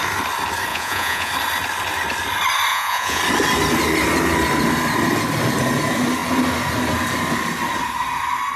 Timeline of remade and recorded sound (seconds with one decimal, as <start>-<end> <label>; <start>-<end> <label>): 0.0-0.7 recorded; 0.7-1.3 remade; 1.3-2.7 recorded; 2.7-3.2 remade; 3.2-8.6 recorded